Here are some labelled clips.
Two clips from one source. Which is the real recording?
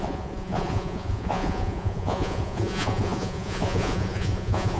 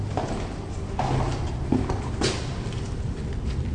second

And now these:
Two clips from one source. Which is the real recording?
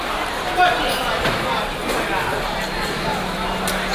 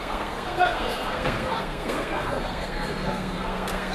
first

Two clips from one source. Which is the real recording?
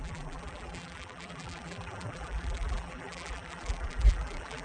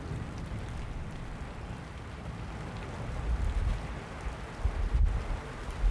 second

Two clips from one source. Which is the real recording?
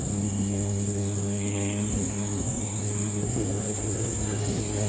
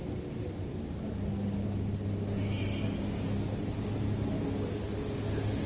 second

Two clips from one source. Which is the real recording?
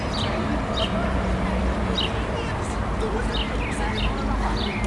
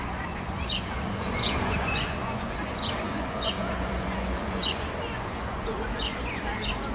first